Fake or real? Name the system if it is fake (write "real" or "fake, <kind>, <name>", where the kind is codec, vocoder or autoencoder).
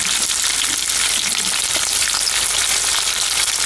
real